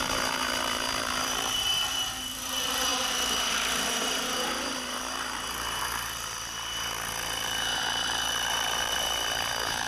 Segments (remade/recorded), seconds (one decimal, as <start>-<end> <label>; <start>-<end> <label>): 0.0-9.9 remade